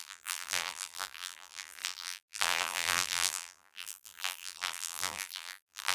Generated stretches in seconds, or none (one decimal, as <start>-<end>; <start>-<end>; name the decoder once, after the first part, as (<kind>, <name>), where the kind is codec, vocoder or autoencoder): 0.0-5.9 (vocoder, BigVGAN v2)